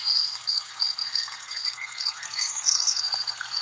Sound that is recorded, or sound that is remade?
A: remade